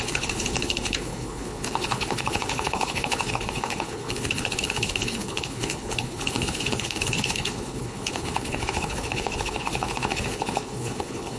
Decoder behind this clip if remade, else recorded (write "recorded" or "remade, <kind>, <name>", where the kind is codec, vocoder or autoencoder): remade, codec, HILCodec